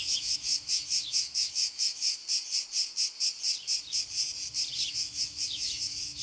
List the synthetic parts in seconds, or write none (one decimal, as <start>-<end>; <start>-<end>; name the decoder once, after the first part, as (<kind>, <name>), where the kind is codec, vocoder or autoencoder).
0.0-2.2 (autoencoder, DAC-VAE); 4.9-6.2